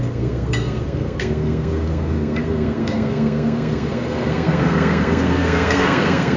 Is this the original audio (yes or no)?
no